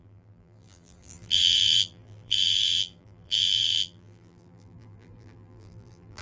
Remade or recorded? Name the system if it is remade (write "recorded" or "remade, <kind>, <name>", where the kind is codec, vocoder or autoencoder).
remade, vocoder, BigVGAN v2